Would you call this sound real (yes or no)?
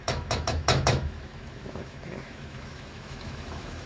no